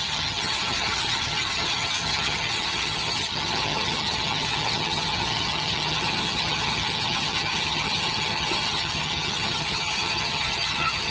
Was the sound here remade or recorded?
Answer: remade